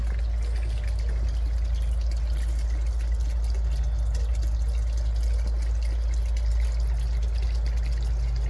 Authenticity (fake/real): real